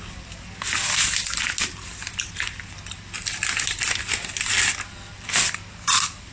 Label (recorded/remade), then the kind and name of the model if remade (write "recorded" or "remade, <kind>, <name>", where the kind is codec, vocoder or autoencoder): recorded